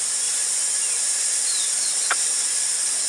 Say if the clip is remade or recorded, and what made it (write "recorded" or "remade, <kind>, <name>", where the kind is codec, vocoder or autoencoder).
recorded